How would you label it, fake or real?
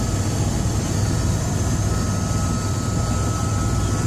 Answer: fake